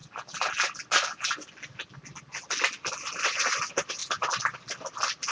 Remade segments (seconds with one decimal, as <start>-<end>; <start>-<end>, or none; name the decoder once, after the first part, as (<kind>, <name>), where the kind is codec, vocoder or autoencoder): 3.2-4.0 (vocoder, BigVGAN v2); 4.7-5.3